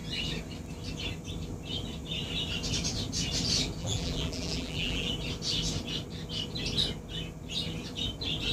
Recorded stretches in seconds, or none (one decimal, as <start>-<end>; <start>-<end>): 0.0-3.8; 5.1-8.5